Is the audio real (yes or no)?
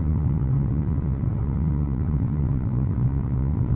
no